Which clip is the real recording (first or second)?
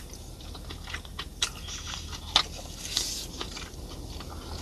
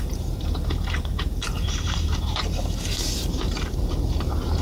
first